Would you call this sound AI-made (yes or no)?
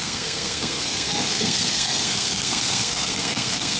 yes